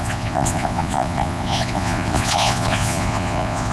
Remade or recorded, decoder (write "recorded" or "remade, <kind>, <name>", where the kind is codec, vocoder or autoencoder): remade, vocoder, Vocos